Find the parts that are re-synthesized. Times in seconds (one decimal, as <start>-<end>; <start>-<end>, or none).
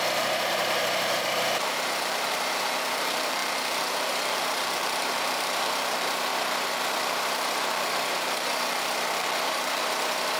0.0-6.3; 6.8-10.4